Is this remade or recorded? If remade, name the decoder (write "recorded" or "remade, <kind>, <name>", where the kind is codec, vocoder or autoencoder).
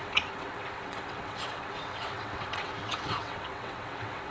remade, vocoder, WaveNeXt